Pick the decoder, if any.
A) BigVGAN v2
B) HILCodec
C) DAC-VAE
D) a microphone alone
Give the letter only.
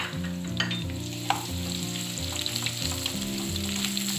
D